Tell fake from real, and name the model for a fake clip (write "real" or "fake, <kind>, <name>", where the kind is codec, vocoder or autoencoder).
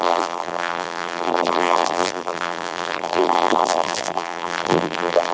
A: fake, vocoder, BigVGAN v2